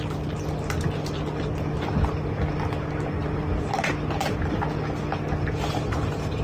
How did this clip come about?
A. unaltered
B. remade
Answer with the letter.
A